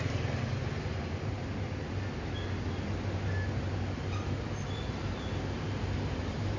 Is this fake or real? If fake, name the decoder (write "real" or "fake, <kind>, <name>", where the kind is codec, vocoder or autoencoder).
real